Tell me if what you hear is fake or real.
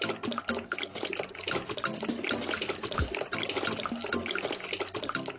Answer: real